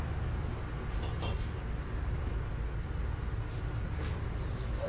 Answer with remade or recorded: recorded